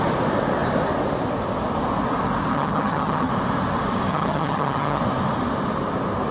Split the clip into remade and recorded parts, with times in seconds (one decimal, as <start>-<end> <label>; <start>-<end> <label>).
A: 0.0-2.5 recorded; 2.5-3.3 remade; 3.3-4.1 recorded; 4.1-5.0 remade; 5.0-6.3 recorded